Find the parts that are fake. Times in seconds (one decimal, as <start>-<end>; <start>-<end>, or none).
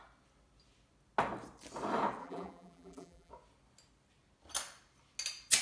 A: 2.2-3.3